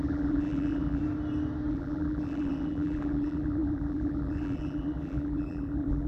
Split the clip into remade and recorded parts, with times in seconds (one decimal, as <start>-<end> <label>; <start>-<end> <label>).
0.0-1.0 remade; 1.0-1.7 recorded; 1.7-6.1 remade